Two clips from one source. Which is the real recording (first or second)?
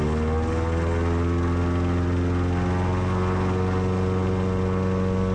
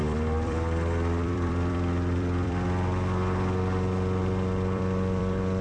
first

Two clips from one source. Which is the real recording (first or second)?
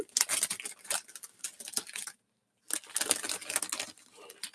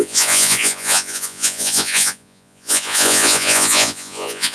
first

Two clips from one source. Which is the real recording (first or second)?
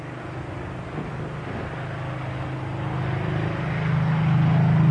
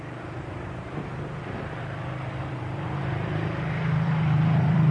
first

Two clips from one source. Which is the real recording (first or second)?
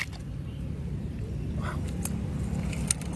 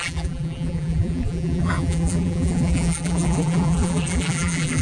first